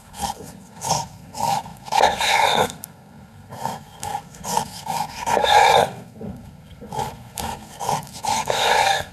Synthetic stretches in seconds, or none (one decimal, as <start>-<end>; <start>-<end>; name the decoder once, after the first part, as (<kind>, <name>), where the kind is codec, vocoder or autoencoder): 0.0-9.1 (codec, SNAC)